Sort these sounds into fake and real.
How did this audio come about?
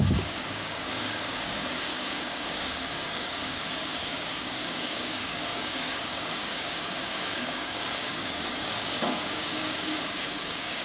fake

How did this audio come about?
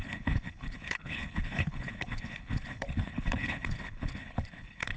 fake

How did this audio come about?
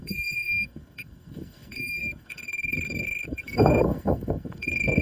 fake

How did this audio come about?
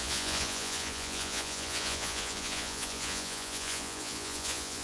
fake